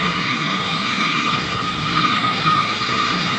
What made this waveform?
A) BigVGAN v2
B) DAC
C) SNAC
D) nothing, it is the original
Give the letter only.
C